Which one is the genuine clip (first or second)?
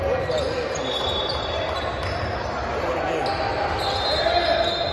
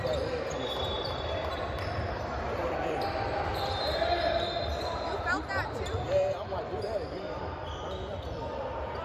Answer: first